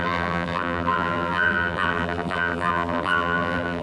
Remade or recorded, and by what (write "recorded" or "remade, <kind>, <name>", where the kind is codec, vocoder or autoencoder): remade, vocoder, BigVGAN v2